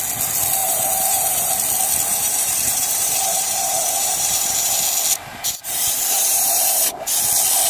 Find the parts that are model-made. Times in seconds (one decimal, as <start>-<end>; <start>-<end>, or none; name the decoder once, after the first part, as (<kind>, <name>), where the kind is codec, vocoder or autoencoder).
0.6-1.5 (vocoder, BigVGAN v2); 2.1-4.8; 5.3-6.9